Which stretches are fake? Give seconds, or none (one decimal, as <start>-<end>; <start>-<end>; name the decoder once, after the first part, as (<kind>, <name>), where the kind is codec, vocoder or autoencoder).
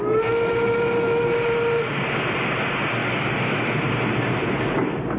none